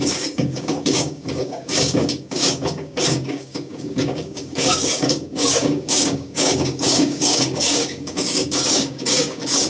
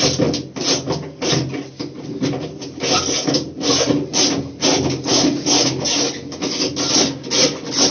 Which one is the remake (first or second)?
first